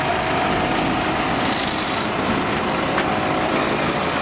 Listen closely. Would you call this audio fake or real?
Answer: real